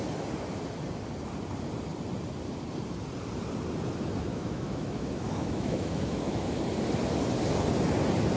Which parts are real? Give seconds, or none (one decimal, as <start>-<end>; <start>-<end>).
0.0-4.3; 6.6-8.4

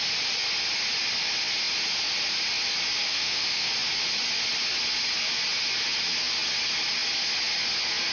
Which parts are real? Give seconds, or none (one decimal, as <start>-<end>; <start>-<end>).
0.0-3.0; 3.7-8.1